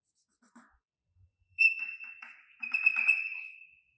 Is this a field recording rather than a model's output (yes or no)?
no